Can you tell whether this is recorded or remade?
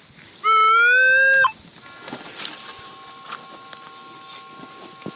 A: recorded